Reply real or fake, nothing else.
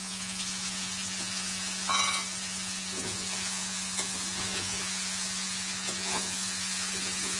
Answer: fake